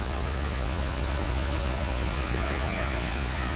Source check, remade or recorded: remade